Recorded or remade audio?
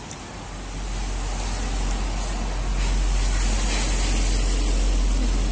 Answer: recorded